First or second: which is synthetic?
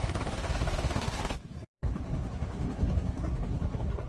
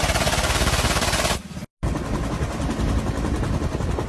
first